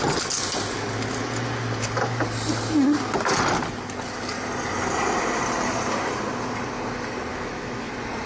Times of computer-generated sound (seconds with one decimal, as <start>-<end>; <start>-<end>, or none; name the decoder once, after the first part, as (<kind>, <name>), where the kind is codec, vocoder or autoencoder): 7.3-7.9 (autoencoder, DAC-VAE)